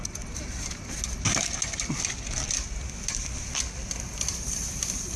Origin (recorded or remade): recorded